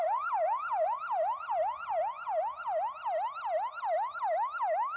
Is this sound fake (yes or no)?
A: no